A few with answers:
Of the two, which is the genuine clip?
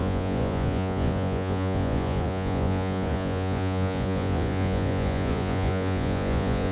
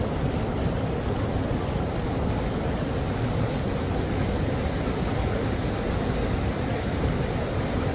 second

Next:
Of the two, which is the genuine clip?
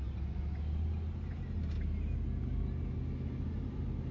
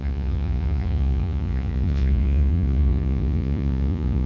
first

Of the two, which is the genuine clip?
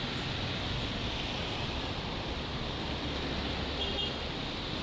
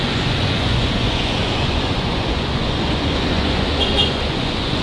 first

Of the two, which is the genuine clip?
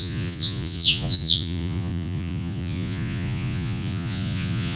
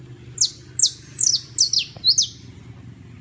second